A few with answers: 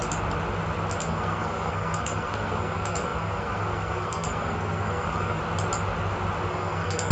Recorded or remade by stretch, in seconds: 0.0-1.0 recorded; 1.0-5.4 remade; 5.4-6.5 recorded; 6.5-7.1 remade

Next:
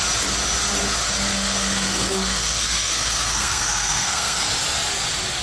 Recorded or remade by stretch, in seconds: 0.0-1.3 recorded; 1.3-4.5 remade; 4.5-5.4 recorded

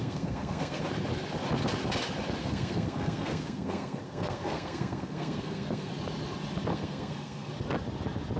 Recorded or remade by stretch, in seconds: 0.0-0.8 remade; 0.8-2.4 recorded; 2.4-5.9 remade; 5.9-6.7 recorded; 6.7-7.5 remade; 7.5-8.4 recorded

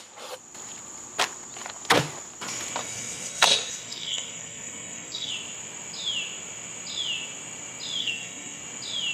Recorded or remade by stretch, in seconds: 0.0-2.8 recorded; 2.8-5.3 remade; 5.3-8.0 recorded; 8.0-8.6 remade; 8.6-9.1 recorded

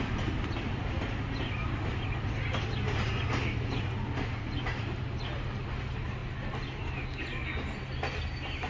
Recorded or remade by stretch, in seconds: 0.0-8.7 recorded